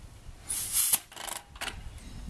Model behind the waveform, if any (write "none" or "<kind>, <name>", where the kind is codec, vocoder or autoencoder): none